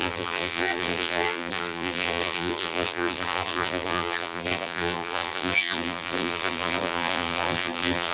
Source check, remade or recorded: remade